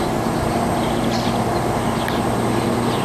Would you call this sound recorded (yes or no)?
yes